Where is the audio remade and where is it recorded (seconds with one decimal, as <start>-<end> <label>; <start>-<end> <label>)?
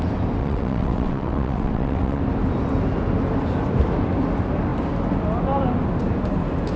0.0-0.4 recorded; 0.4-2.2 remade; 2.2-6.8 recorded